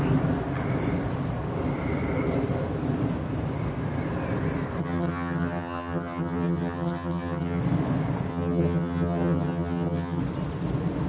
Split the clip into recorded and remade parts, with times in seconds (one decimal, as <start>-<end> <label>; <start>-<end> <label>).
0.0-4.8 recorded; 4.8-7.6 remade; 7.6-8.3 recorded; 8.3-10.2 remade; 10.2-11.1 recorded